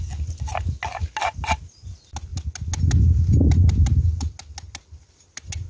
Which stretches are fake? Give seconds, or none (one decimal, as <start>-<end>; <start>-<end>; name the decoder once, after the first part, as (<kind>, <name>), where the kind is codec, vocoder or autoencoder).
none